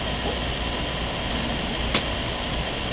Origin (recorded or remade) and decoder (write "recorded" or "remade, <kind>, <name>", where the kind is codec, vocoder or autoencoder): recorded